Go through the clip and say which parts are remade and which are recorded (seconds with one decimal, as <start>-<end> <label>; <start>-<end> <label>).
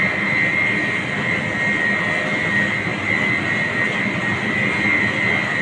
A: 0.0-5.6 recorded